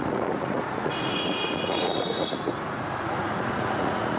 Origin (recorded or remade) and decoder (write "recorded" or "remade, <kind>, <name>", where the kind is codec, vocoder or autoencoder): remade, vocoder, Vocos